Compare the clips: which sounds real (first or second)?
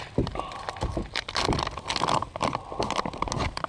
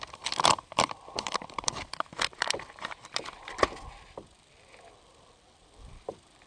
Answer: first